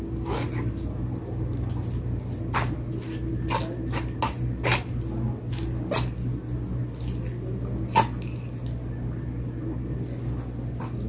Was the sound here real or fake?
real